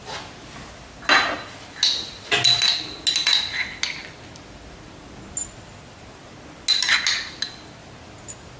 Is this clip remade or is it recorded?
recorded